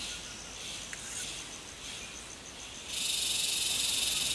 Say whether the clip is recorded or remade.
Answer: recorded